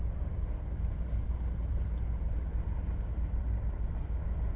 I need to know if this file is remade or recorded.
recorded